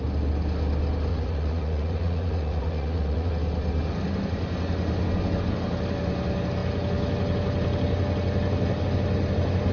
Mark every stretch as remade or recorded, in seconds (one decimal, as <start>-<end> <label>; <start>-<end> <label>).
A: 0.0-1.1 recorded; 1.1-3.3 remade; 3.3-9.7 recorded